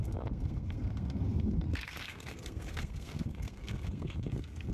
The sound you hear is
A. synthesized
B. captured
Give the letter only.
A